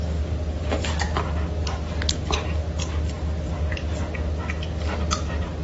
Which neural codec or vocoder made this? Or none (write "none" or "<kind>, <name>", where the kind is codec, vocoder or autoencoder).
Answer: none